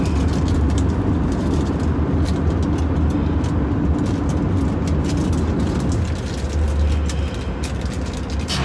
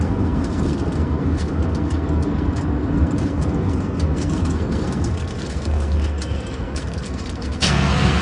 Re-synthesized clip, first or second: second